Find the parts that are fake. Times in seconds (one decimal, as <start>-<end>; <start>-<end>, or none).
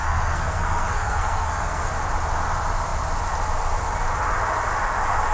0.0-1.9